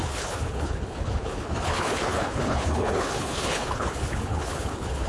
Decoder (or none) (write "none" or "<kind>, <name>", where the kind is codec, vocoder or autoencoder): codec, HILCodec